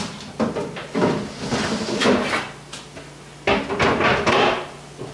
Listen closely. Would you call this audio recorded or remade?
recorded